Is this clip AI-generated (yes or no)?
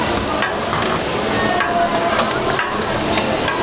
no